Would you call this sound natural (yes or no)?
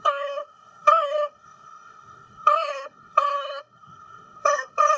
no